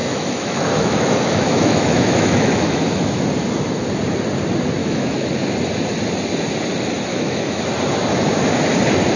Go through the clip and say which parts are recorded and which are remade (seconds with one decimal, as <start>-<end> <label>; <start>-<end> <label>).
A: 0.0-3.2 remade; 3.2-4.8 recorded; 4.8-5.3 remade; 5.3-7.1 recorded; 7.1-7.6 remade; 7.6-9.2 recorded